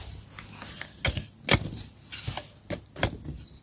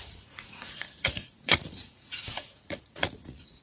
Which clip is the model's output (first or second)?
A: second